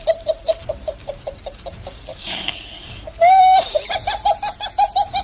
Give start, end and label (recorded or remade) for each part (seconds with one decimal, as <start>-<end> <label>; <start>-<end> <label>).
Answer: 0.0-2.1 recorded; 2.1-3.4 remade; 3.4-5.2 recorded